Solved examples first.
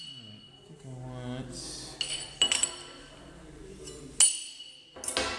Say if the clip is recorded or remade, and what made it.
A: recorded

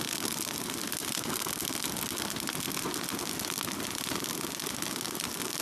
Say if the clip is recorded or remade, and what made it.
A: recorded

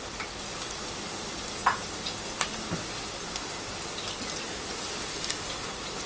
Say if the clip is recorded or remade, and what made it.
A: recorded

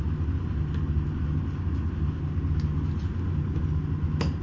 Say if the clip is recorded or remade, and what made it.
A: recorded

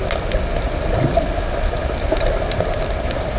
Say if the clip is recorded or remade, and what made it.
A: recorded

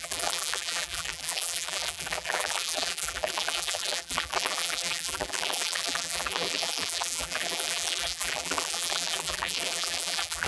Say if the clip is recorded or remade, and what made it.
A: remade, vocoder, BigVGAN v2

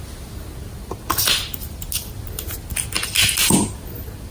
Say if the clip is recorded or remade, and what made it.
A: recorded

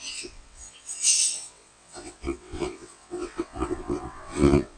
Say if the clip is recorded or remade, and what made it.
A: remade, vocoder, WaveNeXt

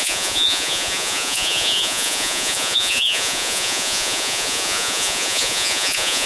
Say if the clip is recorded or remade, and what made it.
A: remade, vocoder, Vocos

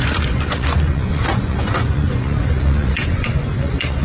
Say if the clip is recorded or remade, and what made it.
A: remade, vocoder, Vocos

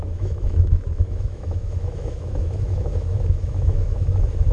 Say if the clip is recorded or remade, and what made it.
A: remade, autoencoder, DAC-VAE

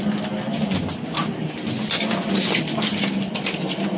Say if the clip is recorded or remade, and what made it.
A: recorded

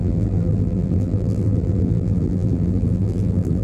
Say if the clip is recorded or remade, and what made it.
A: remade, vocoder, BigVGAN v2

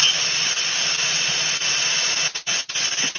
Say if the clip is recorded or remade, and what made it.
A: recorded